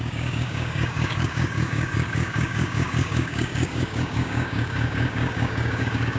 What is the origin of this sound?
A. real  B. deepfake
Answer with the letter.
B